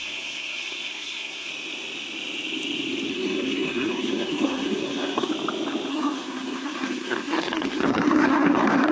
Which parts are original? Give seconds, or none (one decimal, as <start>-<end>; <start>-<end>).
1.5-3.1; 5.3-5.9